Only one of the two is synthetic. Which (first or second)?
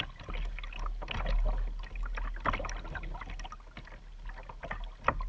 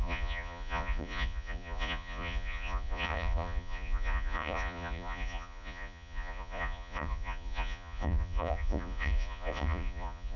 second